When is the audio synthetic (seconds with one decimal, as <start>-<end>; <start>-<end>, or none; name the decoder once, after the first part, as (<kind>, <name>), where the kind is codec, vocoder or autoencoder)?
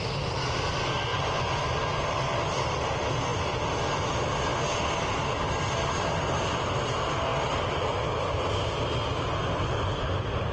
1.1-1.6 (vocoder, Vocos)